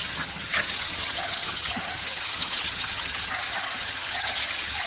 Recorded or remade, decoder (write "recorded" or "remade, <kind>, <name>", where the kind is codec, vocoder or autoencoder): remade, vocoder, HiFi-GAN